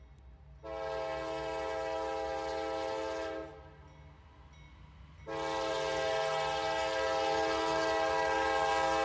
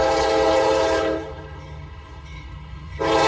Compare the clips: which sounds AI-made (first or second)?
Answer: second